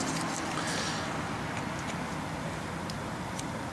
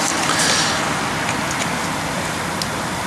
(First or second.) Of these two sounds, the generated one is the second